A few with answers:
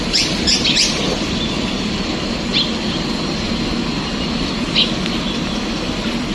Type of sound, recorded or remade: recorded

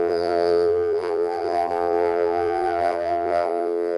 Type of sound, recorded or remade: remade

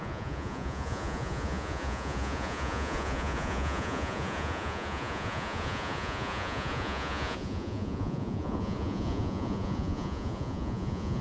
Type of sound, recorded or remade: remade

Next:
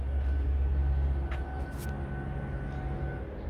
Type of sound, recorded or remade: recorded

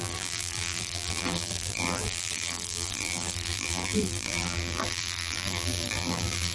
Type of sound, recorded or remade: remade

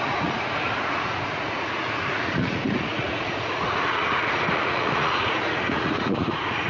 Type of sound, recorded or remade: remade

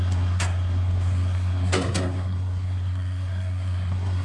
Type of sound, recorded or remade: remade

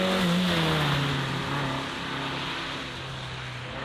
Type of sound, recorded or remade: recorded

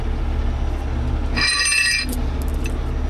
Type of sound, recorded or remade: recorded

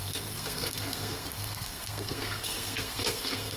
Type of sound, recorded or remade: remade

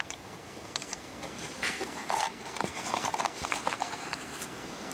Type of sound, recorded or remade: remade